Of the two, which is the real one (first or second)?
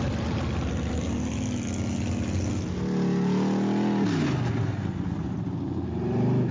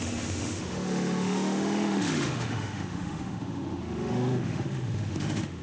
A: first